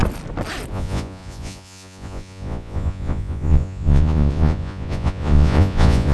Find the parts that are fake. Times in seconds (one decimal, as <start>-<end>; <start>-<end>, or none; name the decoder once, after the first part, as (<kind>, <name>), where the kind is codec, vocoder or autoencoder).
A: 0.7-6.1 (vocoder, Vocos)